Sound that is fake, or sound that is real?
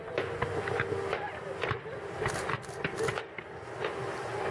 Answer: real